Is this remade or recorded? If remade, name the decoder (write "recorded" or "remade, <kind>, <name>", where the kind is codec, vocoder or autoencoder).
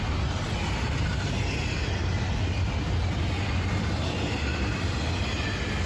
recorded